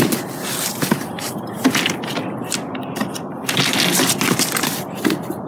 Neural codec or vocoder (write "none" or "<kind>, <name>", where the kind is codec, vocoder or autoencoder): vocoder, BigVGAN v2